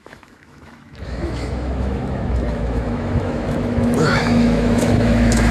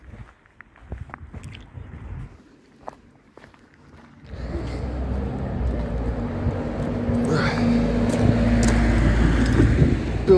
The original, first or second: second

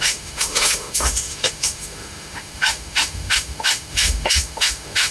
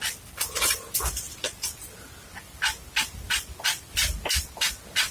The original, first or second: second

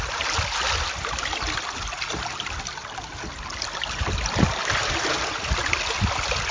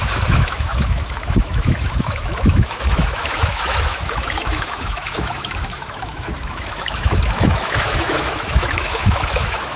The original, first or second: first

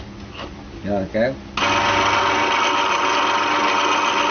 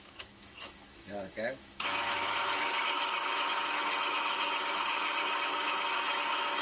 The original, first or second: first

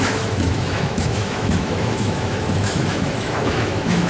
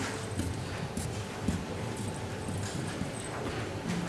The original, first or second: second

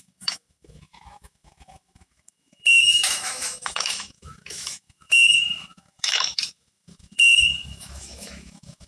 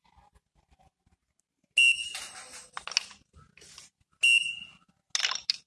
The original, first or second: second